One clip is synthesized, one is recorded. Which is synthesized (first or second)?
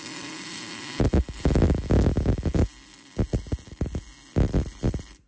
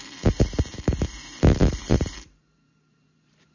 second